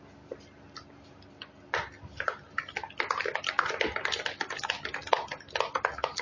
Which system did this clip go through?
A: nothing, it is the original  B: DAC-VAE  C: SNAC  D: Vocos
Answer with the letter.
A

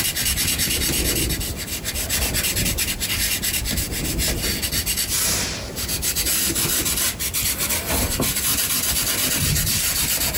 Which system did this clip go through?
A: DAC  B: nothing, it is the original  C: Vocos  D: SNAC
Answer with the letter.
B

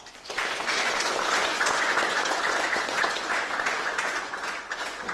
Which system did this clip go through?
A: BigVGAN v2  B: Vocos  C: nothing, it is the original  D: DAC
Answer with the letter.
B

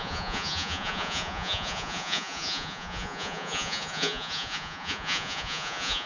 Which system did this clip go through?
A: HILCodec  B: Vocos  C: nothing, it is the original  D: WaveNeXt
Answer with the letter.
B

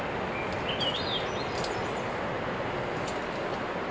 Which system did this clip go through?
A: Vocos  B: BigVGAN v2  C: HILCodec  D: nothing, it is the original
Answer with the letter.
D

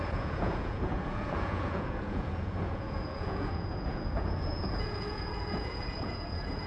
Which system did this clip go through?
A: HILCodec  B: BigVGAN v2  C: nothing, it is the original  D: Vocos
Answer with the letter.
D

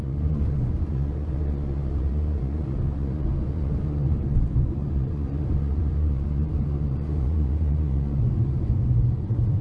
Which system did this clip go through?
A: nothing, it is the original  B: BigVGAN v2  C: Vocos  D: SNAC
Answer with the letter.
C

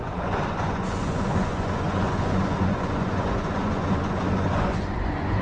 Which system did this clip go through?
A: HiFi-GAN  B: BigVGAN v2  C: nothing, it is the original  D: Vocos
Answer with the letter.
D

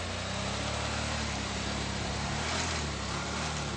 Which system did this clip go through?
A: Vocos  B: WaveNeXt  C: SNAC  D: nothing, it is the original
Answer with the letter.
D